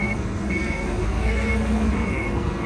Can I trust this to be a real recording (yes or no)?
no